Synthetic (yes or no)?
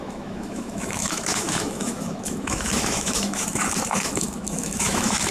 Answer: yes